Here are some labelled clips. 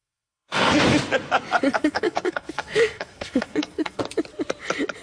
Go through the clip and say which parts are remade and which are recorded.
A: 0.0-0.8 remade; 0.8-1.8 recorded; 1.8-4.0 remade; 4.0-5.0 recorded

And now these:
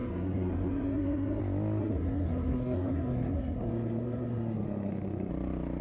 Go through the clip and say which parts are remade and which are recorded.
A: 0.0-1.4 remade; 1.4-1.8 recorded; 1.8-5.3 remade; 5.3-5.8 recorded

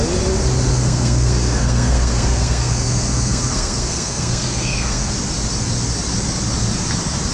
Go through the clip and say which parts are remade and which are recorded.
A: 0.0-0.7 recorded; 0.7-5.1 remade; 5.1-7.3 recorded

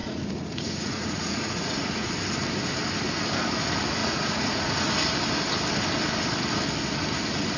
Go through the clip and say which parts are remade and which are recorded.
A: 0.0-2.1 remade; 2.1-4.0 recorded; 4.0-4.9 remade; 4.9-7.6 recorded

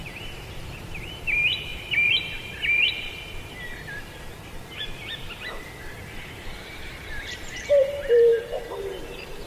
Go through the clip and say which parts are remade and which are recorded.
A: 0.0-1.7 remade; 1.7-6.6 recorded; 6.6-9.5 remade

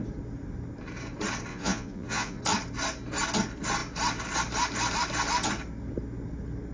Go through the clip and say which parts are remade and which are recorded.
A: 0.0-1.5 recorded; 1.5-2.4 remade; 2.4-6.7 recorded

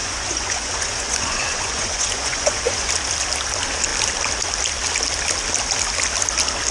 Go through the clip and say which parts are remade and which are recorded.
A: 0.0-2.9 remade; 2.9-6.7 recorded